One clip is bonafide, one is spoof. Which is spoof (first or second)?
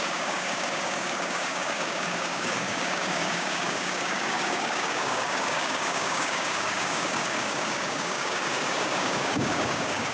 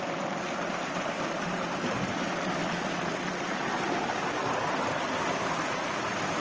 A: first